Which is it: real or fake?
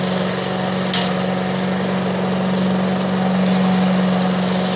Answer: real